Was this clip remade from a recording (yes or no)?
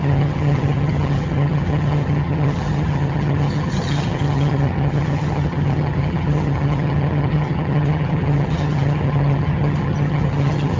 yes